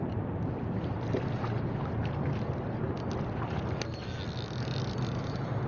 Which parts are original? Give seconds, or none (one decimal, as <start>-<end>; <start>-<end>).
0.0-5.7